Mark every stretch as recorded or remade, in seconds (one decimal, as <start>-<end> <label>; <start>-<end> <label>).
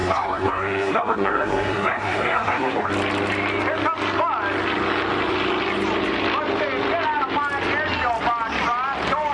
0.0-2.9 remade; 2.9-9.3 recorded